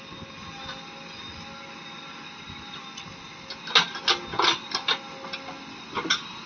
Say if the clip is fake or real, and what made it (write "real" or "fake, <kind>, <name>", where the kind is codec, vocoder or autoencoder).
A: real